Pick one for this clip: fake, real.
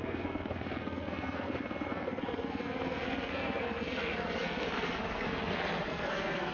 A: fake